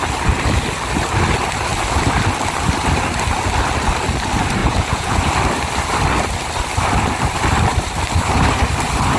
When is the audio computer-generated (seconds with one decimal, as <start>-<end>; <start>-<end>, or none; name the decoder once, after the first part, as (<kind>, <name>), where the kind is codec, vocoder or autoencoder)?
4.6-5.2 (vocoder, Vocos)